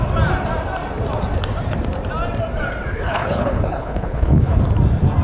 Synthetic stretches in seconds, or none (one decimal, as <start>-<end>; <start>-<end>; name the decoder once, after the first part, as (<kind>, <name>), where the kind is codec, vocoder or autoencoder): 2.9-4.6 (codec, HILCodec)